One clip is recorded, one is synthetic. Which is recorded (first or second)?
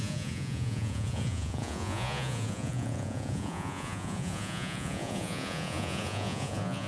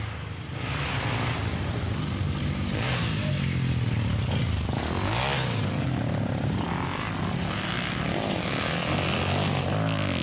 second